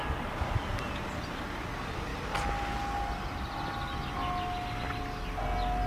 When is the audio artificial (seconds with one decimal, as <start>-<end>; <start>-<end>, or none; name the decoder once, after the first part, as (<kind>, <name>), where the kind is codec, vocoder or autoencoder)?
none